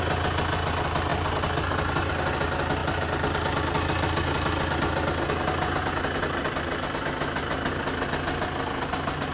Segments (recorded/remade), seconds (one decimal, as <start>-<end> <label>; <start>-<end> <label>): 0.0-9.3 recorded